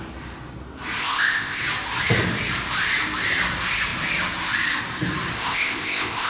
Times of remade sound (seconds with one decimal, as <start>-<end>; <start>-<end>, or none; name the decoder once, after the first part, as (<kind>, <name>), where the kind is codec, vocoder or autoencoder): 1.0-1.6 (codec, ZipCodec); 5.4-6.3